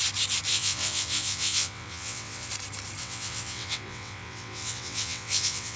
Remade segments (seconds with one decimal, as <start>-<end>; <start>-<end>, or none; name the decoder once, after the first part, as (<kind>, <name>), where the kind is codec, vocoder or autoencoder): 0.5-2.5 (vocoder, WaveNeXt); 3.0-5.8